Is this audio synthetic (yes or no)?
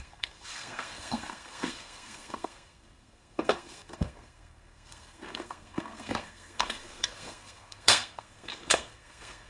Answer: yes